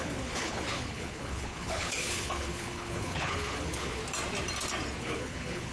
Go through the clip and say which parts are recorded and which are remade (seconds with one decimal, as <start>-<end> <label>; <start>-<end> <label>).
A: 0.0-4.0 remade; 4.0-5.0 recorded; 5.0-5.7 remade